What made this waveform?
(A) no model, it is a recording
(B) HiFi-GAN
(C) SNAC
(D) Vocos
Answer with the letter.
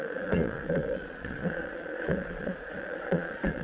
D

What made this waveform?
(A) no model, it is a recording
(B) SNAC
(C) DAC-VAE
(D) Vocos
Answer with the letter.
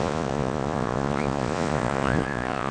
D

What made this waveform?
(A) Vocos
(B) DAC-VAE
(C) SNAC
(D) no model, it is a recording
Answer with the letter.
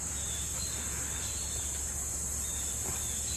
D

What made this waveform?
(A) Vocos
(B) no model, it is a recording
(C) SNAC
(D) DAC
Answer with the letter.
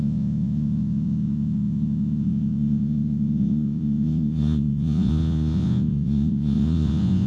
A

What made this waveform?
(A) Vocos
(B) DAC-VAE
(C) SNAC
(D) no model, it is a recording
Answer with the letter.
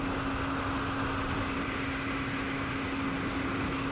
D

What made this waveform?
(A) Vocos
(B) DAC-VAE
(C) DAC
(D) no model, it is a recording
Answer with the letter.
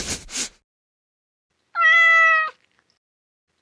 D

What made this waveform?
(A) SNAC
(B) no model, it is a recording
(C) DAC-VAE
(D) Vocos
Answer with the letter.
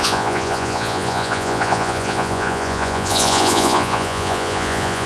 D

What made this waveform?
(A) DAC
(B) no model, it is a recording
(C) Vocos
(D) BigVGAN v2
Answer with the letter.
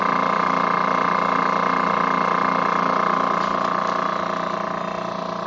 B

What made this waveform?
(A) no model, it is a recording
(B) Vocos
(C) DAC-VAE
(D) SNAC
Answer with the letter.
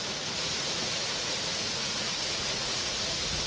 B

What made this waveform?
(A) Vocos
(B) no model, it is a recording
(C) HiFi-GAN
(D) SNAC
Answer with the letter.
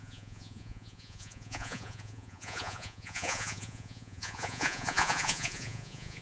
A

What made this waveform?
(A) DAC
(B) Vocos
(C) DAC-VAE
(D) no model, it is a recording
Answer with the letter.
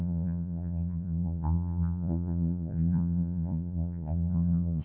B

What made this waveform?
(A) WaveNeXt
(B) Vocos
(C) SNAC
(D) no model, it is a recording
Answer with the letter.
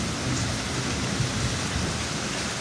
D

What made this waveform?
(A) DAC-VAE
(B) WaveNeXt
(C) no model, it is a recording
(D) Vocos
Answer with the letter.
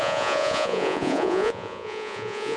D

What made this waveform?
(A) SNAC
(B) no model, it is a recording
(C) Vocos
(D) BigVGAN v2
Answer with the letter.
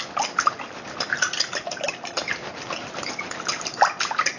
B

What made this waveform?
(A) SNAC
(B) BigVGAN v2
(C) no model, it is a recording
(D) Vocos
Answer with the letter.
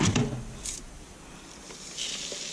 C